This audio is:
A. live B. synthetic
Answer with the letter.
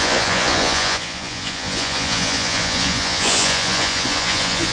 B